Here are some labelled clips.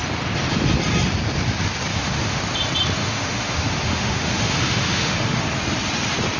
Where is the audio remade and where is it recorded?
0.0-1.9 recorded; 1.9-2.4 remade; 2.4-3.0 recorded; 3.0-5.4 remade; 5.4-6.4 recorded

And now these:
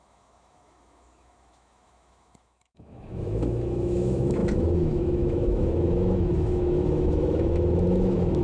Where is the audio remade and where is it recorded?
0.0-8.4 remade

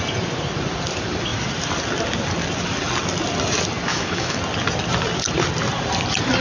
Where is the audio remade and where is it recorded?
0.0-3.9 recorded; 3.9-4.4 remade; 4.4-6.4 recorded

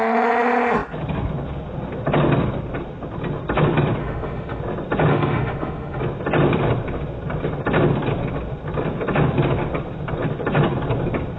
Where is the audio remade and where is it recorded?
0.0-4.0 recorded; 4.0-4.6 remade; 4.6-5.1 recorded; 5.1-6.0 remade; 6.0-11.4 recorded

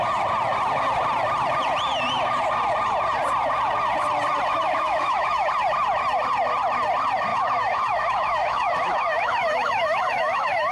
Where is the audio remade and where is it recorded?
0.0-4.5 recorded; 4.5-5.5 remade; 5.5-7.3 recorded; 7.3-10.7 remade

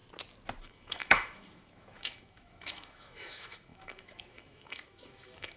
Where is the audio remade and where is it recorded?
0.0-0.6 recorded; 0.6-5.6 remade

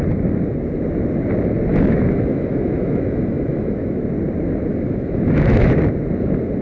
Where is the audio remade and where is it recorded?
0.0-1.7 recorded; 1.7-4.0 remade; 4.0-4.7 recorded; 4.7-5.8 remade; 5.8-6.6 recorded

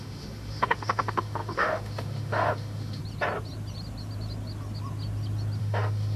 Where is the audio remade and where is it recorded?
0.0-3.0 remade; 3.0-5.6 recorded; 5.6-6.2 remade